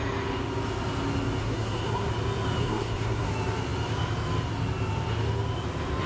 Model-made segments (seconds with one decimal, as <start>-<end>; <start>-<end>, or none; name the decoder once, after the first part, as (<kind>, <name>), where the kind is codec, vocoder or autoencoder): 1.4-2.1 (codec, SNAC); 2.6-3.3